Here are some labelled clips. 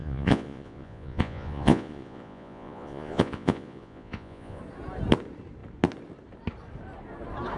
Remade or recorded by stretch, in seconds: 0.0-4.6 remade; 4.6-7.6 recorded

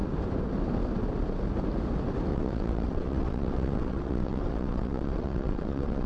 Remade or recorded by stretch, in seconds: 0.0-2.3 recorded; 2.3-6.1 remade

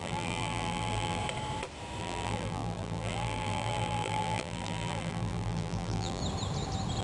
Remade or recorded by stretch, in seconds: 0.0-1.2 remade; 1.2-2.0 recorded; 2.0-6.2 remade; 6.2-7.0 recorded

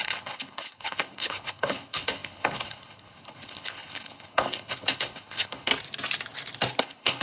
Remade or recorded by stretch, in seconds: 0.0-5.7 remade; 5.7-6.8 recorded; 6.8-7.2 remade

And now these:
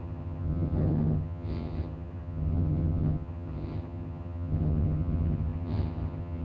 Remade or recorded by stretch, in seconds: 0.0-6.4 remade

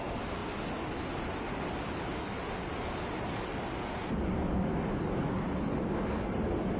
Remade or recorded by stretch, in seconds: 0.0-6.8 recorded